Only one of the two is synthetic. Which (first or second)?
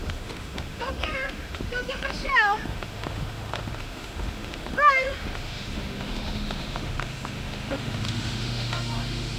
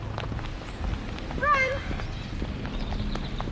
first